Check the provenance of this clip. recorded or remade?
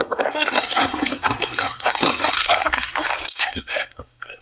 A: remade